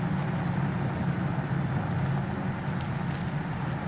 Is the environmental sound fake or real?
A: real